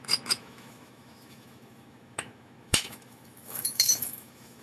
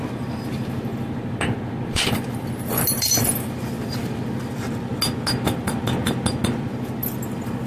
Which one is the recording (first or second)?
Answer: second